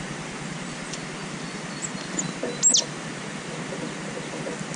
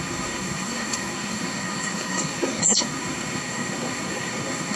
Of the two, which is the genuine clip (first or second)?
first